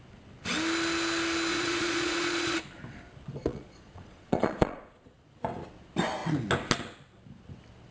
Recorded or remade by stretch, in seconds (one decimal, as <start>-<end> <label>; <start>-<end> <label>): 0.0-1.5 recorded; 1.5-2.6 remade; 2.6-3.4 recorded; 3.4-5.4 remade; 5.4-7.9 recorded